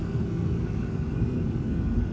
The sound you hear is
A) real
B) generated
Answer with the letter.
B